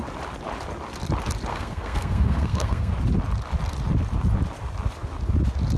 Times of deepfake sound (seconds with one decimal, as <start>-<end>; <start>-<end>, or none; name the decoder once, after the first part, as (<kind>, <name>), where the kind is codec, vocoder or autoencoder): 1.5-2.9 (codec, SNAC)

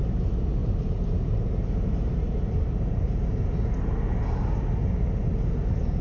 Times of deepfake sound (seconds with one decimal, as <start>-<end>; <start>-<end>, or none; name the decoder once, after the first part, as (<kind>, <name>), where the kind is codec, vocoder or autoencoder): 0.6-2.8 (vocoder, BigVGAN v2)